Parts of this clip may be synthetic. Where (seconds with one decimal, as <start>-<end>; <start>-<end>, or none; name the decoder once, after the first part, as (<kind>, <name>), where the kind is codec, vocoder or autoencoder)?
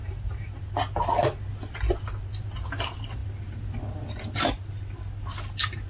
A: 0.0-0.6 (vocoder, BigVGAN v2)